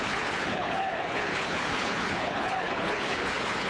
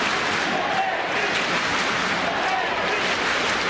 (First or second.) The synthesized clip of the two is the first